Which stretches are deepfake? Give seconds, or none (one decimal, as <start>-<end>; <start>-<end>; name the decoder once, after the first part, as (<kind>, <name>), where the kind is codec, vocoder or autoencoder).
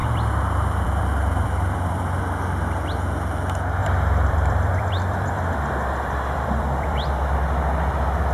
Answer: 0.0-2.2 (vocoder, BigVGAN v2); 3.8-7.1